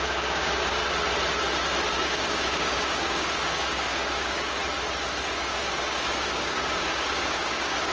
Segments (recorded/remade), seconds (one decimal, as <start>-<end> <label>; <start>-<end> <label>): 0.0-0.8 remade; 0.8-1.9 recorded; 1.9-4.6 remade; 4.6-5.3 recorded; 5.3-7.9 remade

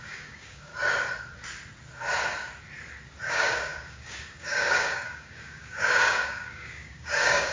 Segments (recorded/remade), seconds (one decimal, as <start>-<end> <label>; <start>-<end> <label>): 0.0-0.7 remade; 0.7-3.3 recorded; 3.3-7.5 remade

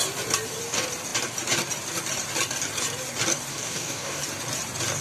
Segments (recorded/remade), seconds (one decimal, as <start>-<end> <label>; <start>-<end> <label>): 0.0-3.5 recorded; 3.5-4.2 remade; 4.2-5.0 recorded

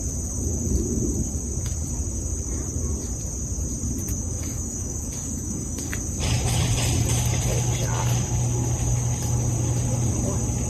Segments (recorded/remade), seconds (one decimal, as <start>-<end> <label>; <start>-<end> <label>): 0.0-4.0 recorded; 4.0-5.9 remade; 5.9-10.7 recorded

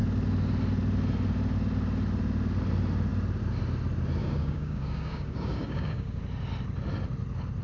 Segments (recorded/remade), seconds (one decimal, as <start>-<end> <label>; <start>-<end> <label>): 0.0-4.2 recorded; 4.2-6.2 remade; 6.2-7.6 recorded

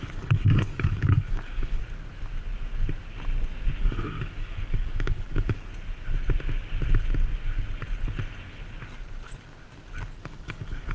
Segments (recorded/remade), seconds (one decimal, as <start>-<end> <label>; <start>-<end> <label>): 0.0-1.8 remade; 1.8-3.8 recorded; 3.8-5.7 remade; 5.7-10.2 recorded; 10.2-10.9 remade